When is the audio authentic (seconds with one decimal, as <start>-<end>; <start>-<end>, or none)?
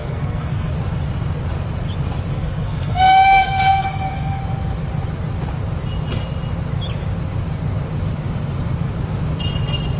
0.7-2.3; 4.4-10.0